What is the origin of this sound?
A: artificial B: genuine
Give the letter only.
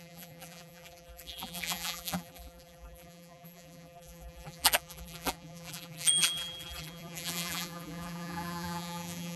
A